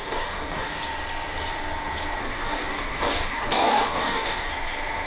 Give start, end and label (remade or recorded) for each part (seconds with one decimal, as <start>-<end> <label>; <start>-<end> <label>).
0.0-0.7 remade; 0.7-2.2 recorded; 2.2-4.5 remade; 4.5-5.1 recorded